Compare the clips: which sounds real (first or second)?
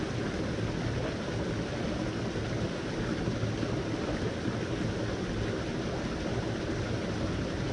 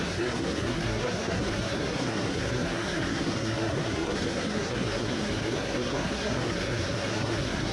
first